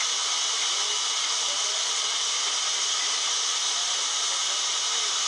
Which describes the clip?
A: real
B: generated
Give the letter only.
A